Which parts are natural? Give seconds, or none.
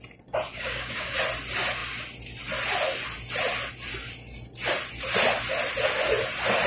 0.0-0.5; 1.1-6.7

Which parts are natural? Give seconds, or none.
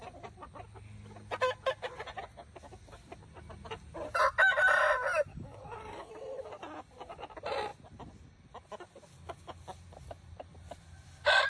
0.0-5.3; 6.1-11.5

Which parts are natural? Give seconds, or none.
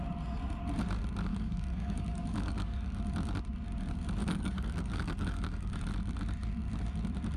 0.0-1.3; 3.0-4.2; 5.7-7.4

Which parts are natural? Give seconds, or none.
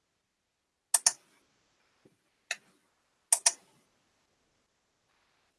0.0-5.6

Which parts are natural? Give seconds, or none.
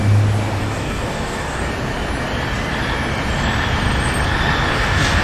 0.0-0.6; 1.6-4.7